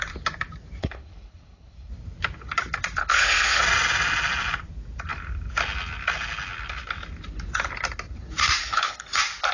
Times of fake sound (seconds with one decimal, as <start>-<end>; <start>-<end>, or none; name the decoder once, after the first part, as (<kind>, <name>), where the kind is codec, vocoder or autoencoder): 0.8-1.9 (codec, HILCodec); 3.0-3.6; 8.6-9.1